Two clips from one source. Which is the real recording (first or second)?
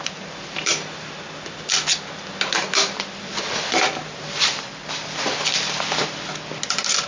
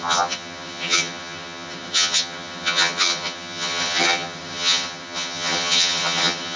first